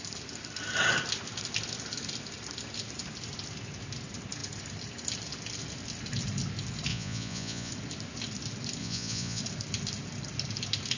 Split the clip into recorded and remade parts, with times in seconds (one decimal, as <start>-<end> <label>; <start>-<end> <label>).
0.0-6.9 recorded; 6.9-7.7 remade; 7.7-8.8 recorded; 8.8-9.4 remade; 9.4-11.0 recorded